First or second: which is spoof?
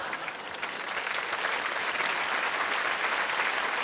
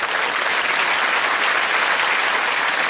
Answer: first